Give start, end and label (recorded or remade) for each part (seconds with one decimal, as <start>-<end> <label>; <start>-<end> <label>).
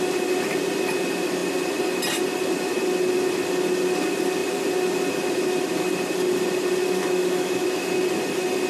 0.0-7.0 recorded; 7.0-7.9 remade; 7.9-8.7 recorded